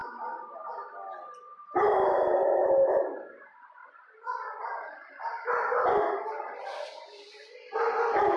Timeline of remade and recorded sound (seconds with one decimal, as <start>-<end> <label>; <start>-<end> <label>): 0.0-0.7 remade; 0.7-2.6 recorded; 2.6-3.4 remade; 3.4-3.8 recorded; 3.8-5.2 remade; 5.2-8.4 recorded

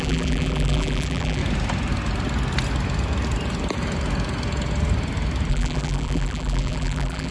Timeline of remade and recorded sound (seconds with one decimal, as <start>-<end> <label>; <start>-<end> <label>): 0.0-1.4 remade; 1.4-5.5 recorded; 5.5-7.3 remade

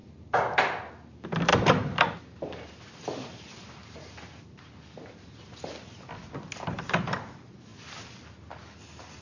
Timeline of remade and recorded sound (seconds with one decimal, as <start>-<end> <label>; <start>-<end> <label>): 0.0-1.5 recorded; 1.5-6.4 remade; 6.4-9.2 recorded

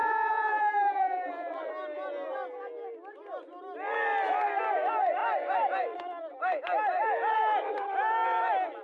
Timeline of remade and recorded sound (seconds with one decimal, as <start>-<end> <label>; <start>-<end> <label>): 0.0-1.7 remade; 1.7-8.8 recorded